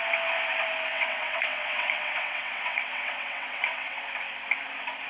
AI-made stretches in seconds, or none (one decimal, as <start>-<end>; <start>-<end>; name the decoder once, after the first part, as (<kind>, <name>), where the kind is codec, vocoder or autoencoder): 0.9-4.0 (vocoder, WaveNeXt)